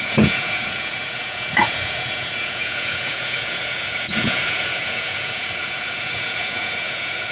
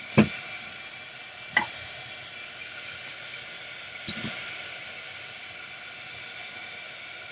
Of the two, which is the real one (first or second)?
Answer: second